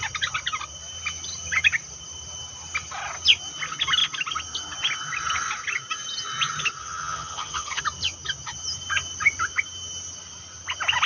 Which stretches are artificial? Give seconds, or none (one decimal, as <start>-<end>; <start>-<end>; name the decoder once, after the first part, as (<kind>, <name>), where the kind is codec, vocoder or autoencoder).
6.8-7.8 (vocoder, HiFi-GAN)